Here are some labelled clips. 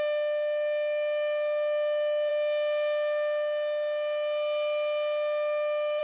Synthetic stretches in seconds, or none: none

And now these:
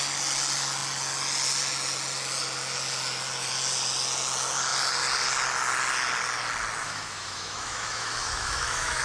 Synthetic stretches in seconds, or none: 6.8-9.0 (autoencoder, DAC-VAE)

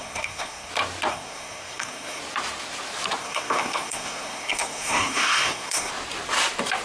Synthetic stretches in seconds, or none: 0.0-0.7 (codec, SNAC); 1.1-2.2; 3.2-5.9

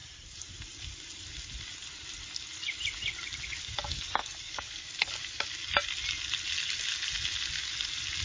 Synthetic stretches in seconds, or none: 3.6-5.6 (codec, DAC)